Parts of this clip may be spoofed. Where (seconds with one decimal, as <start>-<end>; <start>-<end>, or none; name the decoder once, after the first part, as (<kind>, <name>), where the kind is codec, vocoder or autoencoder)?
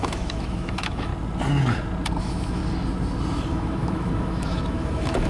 0.0-1.1 (autoencoder, DAC-VAE); 2.2-2.6; 3.5-5.3